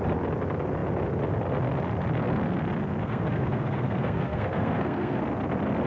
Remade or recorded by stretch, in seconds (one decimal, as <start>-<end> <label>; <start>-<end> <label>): 0.0-3.0 recorded; 3.0-5.2 remade; 5.2-5.9 recorded